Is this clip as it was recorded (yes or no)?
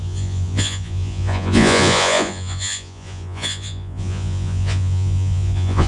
no